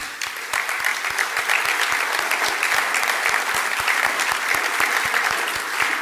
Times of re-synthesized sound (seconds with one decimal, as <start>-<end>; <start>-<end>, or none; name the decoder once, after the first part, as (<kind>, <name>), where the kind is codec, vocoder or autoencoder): none